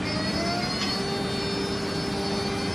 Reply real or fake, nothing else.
real